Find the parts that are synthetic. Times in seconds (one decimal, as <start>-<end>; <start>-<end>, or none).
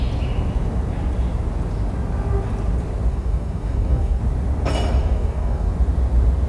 3.1-4.2; 5.0-5.7